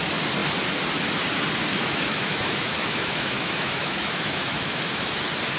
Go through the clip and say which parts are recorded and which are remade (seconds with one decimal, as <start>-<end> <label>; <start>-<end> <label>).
0.0-1.7 recorded; 1.7-5.1 remade; 5.1-5.6 recorded